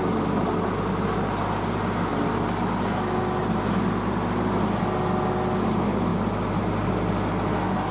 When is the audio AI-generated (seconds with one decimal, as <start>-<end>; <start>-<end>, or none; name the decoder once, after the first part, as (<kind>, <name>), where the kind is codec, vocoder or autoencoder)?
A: none